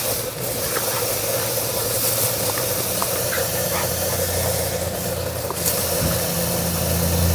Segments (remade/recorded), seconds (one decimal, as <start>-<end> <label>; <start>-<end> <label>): 0.0-3.0 recorded; 3.0-3.9 remade; 3.9-7.3 recorded